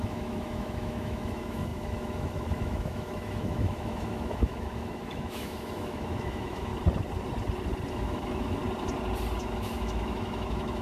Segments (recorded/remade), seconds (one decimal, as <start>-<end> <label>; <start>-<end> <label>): 0.0-6.7 remade; 6.7-7.9 recorded; 7.9-8.6 remade; 8.6-9.4 recorded; 9.4-10.8 remade